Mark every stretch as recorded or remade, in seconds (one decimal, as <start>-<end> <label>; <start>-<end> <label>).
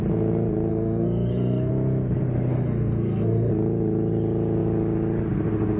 0.0-0.7 recorded; 0.7-1.7 remade; 1.7-2.5 recorded; 2.5-3.5 remade; 3.5-5.8 recorded